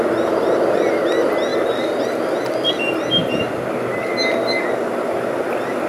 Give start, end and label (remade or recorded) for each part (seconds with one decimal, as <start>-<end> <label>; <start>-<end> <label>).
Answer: 0.0-5.9 recorded